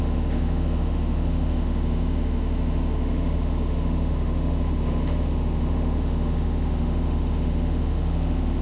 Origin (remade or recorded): remade